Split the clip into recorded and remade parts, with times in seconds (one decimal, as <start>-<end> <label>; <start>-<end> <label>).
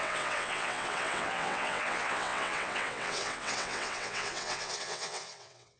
0.0-5.8 remade